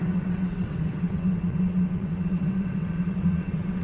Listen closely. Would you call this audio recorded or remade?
remade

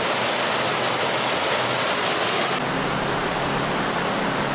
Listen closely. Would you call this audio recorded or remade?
recorded